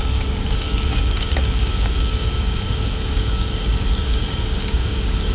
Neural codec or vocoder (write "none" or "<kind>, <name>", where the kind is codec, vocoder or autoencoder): codec, DAC